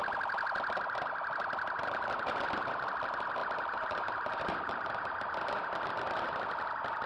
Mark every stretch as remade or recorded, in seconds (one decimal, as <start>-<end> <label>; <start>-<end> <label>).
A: 0.0-1.8 recorded; 1.8-2.5 remade; 2.5-3.4 recorded; 3.4-5.2 remade; 5.2-7.1 recorded